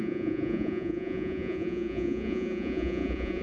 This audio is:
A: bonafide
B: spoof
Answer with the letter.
B